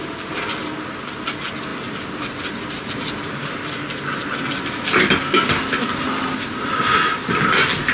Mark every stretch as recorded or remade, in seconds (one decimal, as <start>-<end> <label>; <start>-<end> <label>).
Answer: 0.0-7.9 recorded